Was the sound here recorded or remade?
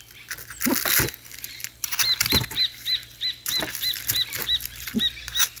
recorded